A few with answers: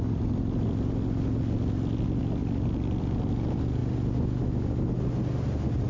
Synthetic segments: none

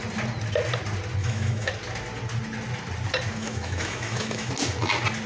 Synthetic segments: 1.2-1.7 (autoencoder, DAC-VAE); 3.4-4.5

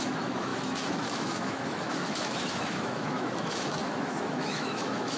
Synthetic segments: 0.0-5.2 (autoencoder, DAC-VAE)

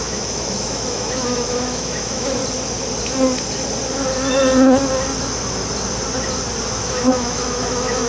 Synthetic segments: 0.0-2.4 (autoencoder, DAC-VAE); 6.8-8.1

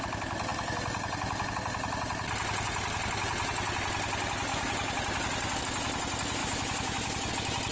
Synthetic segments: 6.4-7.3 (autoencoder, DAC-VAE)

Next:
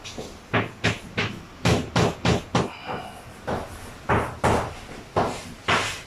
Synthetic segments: 1.2-1.8 (autoencoder, DAC-VAE)

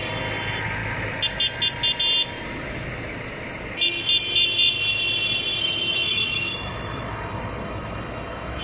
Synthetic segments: 5.6-8.6 (autoencoder, DAC-VAE)

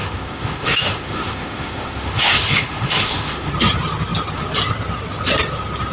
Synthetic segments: 0.0-3.5 (autoencoder, DAC-VAE)